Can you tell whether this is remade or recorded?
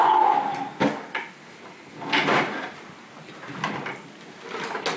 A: recorded